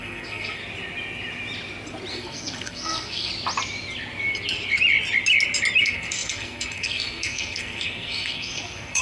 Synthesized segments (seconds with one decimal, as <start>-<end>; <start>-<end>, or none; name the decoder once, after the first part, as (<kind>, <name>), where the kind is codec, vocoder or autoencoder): 0.0-0.6 (codec, SNAC); 2.1-3.3; 5.8-9.0